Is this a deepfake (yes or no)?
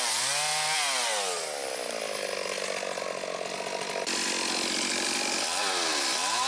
no